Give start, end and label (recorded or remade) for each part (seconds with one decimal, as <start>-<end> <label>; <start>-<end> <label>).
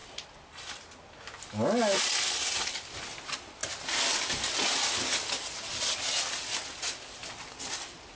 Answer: 0.0-8.2 recorded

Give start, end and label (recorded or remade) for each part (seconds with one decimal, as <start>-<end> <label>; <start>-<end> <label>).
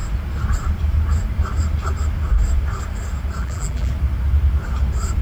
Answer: 0.0-3.4 recorded; 3.4-3.9 remade; 3.9-5.2 recorded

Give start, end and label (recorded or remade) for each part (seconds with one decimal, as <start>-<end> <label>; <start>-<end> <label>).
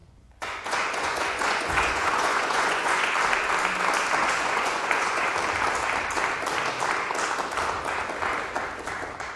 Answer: 0.0-3.1 remade; 3.1-4.2 recorded; 4.2-5.3 remade; 5.3-9.4 recorded